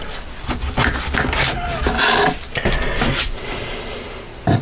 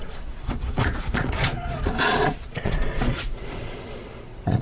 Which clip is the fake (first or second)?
second